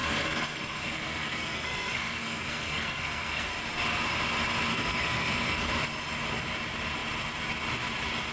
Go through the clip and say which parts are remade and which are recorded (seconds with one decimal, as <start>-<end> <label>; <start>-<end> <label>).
0.0-3.5 remade; 3.5-4.7 recorded; 4.7-5.7 remade; 5.7-8.3 recorded